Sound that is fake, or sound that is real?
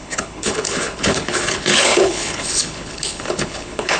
fake